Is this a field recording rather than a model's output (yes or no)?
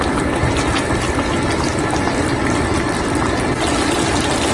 yes